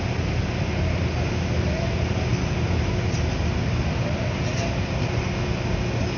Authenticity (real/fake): real